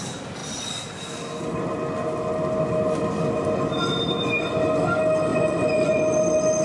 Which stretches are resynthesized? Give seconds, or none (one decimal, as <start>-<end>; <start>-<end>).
5.3-6.0

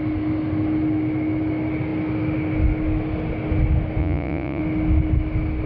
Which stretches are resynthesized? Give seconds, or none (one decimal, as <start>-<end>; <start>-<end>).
4.0-4.6

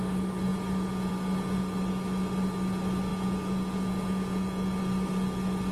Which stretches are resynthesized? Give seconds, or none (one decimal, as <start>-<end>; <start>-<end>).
0.5-1.1; 3.1-4.8

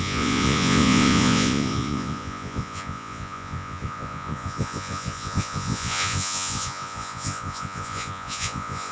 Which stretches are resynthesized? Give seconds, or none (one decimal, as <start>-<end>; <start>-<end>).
0.0-8.9